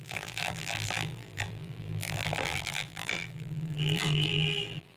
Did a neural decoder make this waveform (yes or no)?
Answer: yes